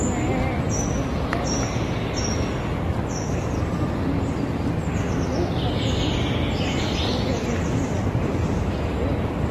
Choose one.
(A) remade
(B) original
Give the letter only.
B